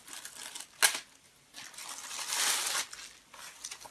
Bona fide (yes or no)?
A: yes